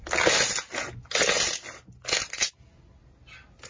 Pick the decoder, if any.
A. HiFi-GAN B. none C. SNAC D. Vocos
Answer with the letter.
B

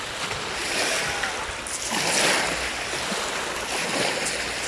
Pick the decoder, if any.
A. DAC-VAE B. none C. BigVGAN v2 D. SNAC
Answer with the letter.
B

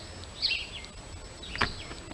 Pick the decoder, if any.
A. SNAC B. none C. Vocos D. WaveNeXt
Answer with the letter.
B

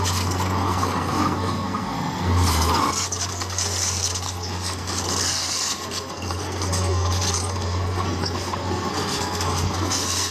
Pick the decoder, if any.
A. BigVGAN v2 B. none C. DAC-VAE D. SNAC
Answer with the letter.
D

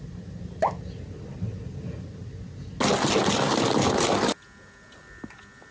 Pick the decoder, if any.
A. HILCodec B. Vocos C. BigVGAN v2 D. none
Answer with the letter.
D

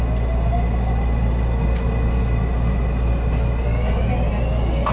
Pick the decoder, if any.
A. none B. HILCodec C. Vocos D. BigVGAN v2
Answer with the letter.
A